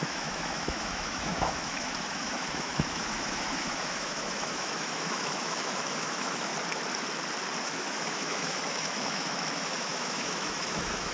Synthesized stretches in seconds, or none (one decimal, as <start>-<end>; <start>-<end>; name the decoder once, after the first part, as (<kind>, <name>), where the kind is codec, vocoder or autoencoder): 0.0-6.5 (autoencoder, DAC-VAE); 7.6-11.1

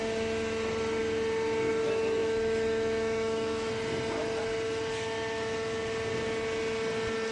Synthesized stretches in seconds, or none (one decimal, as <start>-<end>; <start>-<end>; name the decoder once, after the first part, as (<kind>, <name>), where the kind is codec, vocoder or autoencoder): 2.2-3.7 (autoencoder, DAC-VAE)

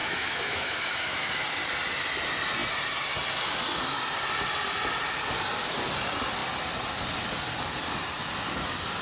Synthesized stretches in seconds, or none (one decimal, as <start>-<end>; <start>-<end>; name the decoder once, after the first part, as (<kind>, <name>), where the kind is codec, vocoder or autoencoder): 0.0-1.3 (autoencoder, DAC-VAE)

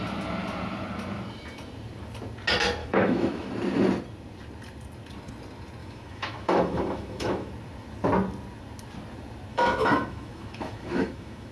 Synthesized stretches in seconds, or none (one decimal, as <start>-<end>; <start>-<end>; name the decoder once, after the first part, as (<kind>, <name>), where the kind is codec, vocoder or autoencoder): 2.8-3.5 (autoencoder, DAC-VAE); 5.8-7.5; 9.5-11.5

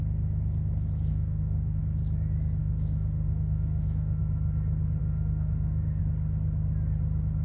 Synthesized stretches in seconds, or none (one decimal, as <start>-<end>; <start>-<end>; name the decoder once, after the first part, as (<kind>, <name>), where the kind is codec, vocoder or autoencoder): 1.1-1.8 (autoencoder, DAC-VAE); 2.6-4.2; 5.0-6.0

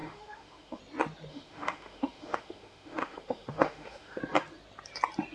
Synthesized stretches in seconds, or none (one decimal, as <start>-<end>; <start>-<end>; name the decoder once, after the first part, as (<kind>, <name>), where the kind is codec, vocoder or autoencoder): 0.0-0.8 (autoencoder, DAC-VAE); 1.3-4.2

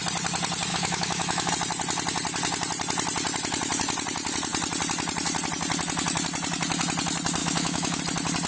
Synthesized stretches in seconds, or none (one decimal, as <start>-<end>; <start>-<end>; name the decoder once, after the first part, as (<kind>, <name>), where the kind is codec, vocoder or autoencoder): 0.7-1.5 (autoencoder, DAC-VAE); 7.4-8.0

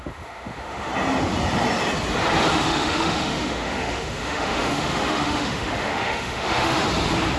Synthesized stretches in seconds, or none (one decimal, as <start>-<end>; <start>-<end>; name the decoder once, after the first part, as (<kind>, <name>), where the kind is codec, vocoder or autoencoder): 0.0-0.9 (autoencoder, DAC-VAE); 2.5-6.8